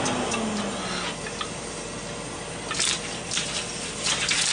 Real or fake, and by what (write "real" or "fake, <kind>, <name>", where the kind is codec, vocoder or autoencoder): real